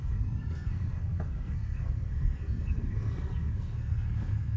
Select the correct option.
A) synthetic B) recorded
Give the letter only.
A